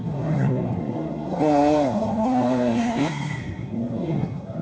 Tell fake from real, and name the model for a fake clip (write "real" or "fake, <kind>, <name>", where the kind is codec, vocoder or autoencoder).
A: fake, codec, SNAC